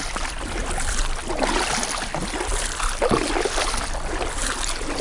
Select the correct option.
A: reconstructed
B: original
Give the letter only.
B